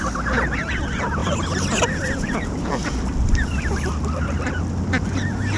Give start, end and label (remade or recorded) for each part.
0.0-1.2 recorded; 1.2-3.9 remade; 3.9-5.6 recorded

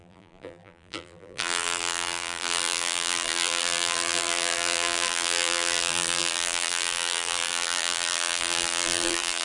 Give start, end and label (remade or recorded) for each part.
0.0-9.4 remade

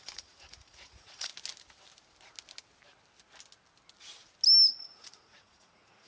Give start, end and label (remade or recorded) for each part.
0.0-1.3 remade; 1.3-4.8 recorded; 4.8-6.1 remade